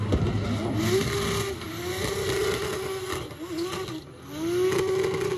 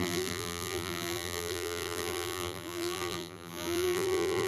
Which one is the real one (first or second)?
first